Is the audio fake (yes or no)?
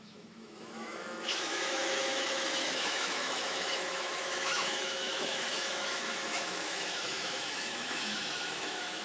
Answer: yes